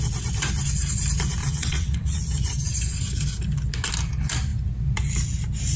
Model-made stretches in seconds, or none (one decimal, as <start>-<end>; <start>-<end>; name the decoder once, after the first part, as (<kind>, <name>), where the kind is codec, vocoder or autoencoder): 1.4-2.2 (vocoder, WaveNeXt)